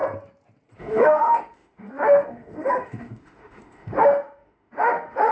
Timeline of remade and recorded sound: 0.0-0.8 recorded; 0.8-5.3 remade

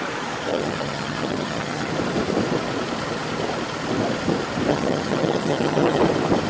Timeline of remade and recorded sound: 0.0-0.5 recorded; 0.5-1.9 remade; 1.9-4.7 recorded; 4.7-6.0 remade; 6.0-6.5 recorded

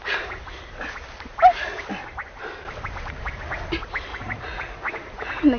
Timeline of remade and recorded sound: 0.0-4.1 recorded; 4.1-4.8 remade; 4.8-5.6 recorded